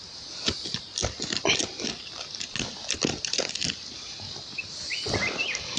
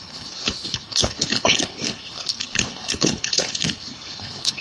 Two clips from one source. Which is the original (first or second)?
first